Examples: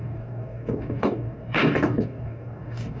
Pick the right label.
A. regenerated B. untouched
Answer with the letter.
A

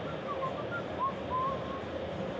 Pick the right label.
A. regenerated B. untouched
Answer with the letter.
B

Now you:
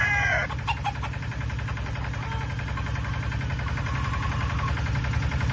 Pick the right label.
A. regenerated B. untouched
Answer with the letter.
B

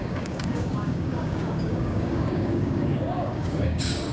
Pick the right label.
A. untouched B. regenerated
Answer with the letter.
B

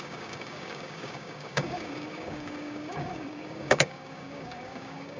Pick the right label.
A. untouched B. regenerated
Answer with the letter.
B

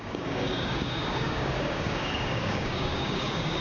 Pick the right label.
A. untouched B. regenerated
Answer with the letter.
B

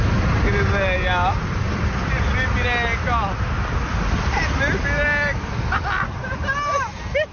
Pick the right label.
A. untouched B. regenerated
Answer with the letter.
A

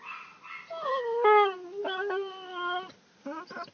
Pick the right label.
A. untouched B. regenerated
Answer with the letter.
A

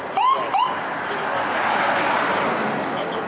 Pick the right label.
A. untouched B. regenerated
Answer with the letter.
A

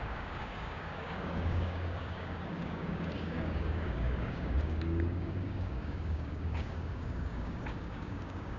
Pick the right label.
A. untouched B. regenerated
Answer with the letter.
B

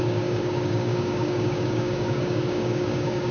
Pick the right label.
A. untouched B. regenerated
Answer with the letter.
B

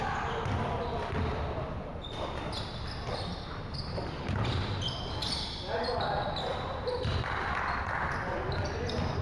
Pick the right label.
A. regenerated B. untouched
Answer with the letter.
B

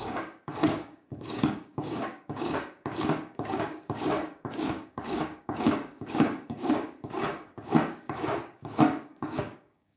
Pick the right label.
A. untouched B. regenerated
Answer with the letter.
B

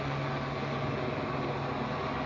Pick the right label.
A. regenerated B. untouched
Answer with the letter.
B